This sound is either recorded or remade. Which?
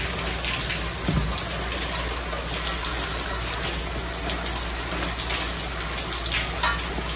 recorded